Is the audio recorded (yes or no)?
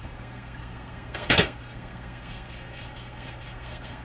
no